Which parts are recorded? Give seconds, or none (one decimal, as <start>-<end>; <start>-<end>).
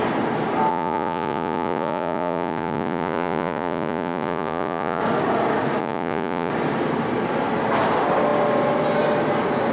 0.0-0.7; 5.0-5.8; 6.5-9.7